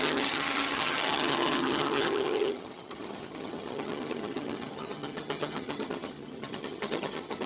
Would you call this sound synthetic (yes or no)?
yes